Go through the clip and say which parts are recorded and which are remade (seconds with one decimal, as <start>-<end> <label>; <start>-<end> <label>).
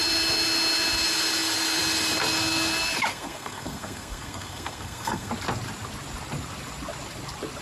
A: 0.0-3.1 recorded; 3.1-5.3 remade; 5.3-7.6 recorded